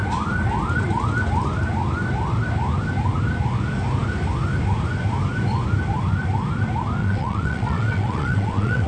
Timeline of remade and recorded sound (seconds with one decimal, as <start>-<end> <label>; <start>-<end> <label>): 0.0-7.0 recorded; 7.0-8.9 remade